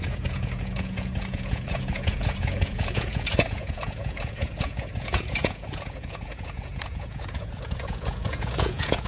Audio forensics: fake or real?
fake